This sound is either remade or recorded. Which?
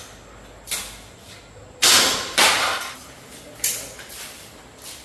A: recorded